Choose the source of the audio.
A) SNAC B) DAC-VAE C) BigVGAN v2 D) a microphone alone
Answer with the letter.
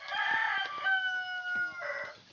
D